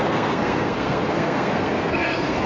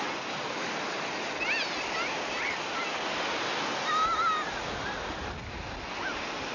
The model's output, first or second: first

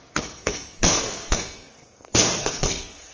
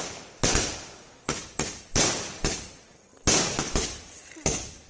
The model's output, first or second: first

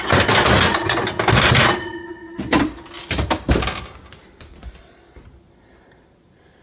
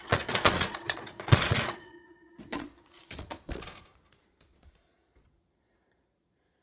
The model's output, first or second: second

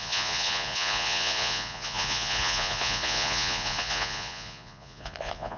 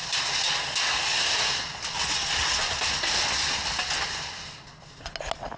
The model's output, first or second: first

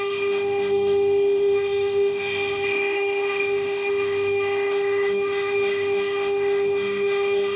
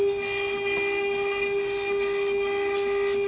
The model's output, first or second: first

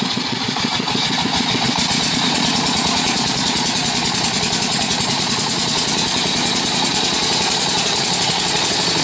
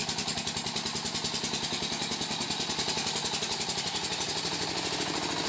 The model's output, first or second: first